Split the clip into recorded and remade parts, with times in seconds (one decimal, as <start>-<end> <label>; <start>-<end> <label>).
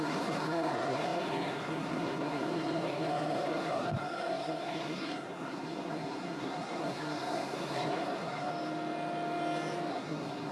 0.0-8.5 remade; 8.5-9.9 recorded; 9.9-10.5 remade